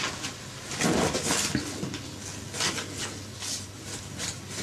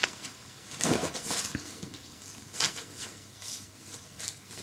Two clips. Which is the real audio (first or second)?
first